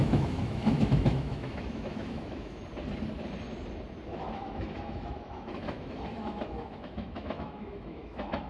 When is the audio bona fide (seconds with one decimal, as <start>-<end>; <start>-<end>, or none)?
2.6-4.1